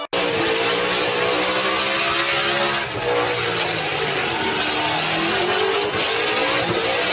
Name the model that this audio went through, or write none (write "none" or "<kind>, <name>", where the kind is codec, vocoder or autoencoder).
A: none